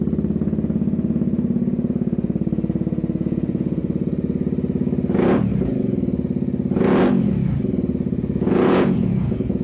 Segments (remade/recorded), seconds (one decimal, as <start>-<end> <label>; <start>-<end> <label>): 0.0-3.8 remade; 3.8-8.2 recorded; 8.2-9.6 remade

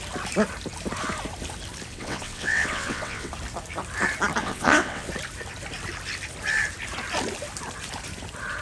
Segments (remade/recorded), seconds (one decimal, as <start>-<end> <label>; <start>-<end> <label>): 0.0-1.9 recorded; 1.9-3.3 remade; 3.3-4.4 recorded; 4.4-5.1 remade; 5.1-8.6 recorded

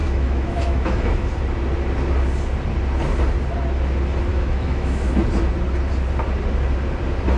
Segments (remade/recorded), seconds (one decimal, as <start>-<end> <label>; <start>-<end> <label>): 0.0-1.3 remade; 1.3-4.3 recorded; 4.3-5.1 remade; 5.1-7.4 recorded

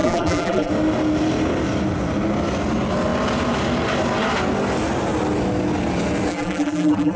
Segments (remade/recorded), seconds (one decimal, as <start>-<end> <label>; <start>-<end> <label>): 0.0-0.7 remade; 0.7-6.3 recorded; 6.3-7.2 remade

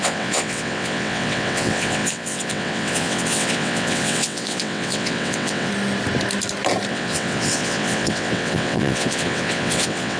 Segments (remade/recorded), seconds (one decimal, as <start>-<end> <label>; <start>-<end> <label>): 0.0-5.7 remade; 5.7-6.9 recorded; 6.9-10.2 remade

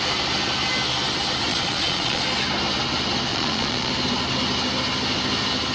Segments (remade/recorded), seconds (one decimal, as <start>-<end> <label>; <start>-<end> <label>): 0.0-1.5 recorded; 1.5-2.2 remade; 2.2-3.3 recorded; 3.3-3.9 remade; 3.9-5.7 recorded

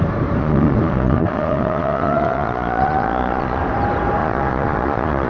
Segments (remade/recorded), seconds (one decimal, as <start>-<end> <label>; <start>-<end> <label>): 0.0-0.4 recorded; 0.4-3.6 remade; 3.6-4.2 recorded; 4.2-5.3 remade